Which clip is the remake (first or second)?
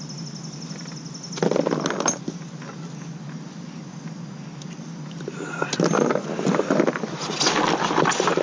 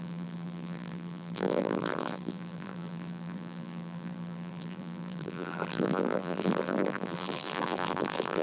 second